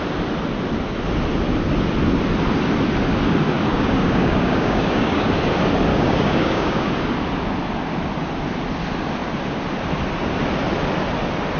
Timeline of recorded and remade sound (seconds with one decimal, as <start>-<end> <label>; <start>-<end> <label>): 0.0-3.7 recorded; 3.7-5.3 remade; 5.3-5.9 recorded; 5.9-6.9 remade; 6.9-11.6 recorded